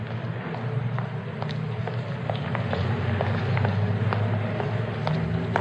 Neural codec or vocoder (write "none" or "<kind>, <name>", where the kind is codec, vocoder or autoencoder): none